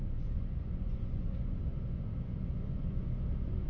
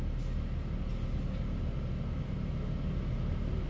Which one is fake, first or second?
first